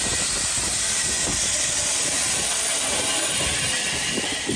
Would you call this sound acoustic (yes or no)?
yes